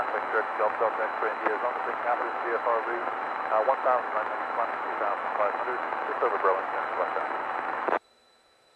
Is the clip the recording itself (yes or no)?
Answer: no